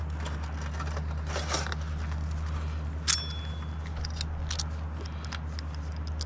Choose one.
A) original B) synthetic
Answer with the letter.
A